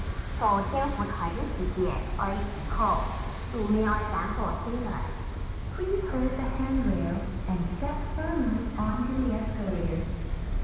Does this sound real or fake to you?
real